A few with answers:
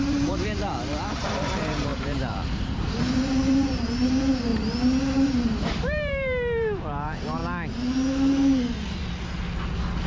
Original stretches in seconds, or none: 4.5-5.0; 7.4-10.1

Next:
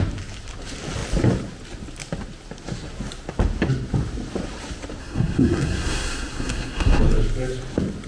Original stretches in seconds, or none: 0.0-5.0; 7.0-8.1

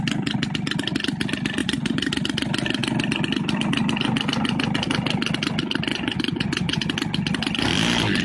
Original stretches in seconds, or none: 0.0-1.6; 2.1-5.9; 6.8-8.2

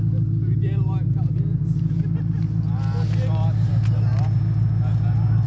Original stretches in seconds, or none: 0.0-5.5

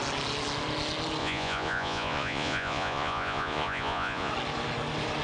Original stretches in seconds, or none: 0.0-1.2; 4.3-5.2

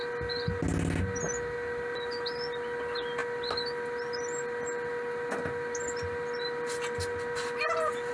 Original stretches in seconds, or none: 0.0-8.1

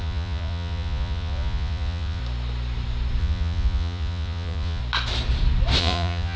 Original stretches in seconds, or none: 2.2-3.2; 4.8-5.8